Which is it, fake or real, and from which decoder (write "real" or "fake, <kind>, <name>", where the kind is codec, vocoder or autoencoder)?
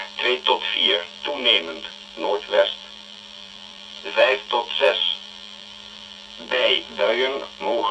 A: fake, vocoder, BigVGAN v2